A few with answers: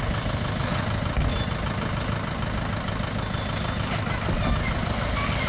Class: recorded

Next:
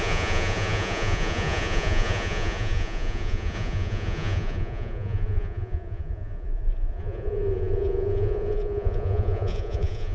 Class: remade